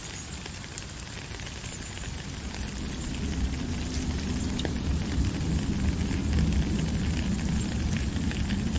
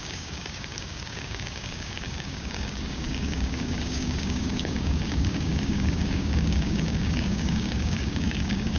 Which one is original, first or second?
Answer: first